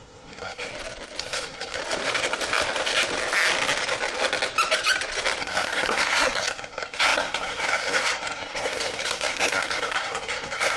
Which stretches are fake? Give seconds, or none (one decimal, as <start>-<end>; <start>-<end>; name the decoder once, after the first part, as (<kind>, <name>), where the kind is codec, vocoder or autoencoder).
0.0-0.7 (codec, SNAC); 1.2-1.8; 5.4-10.8